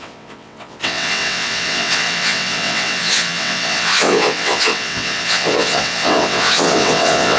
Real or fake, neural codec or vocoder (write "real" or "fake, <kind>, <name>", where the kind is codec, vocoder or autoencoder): fake, vocoder, WaveNeXt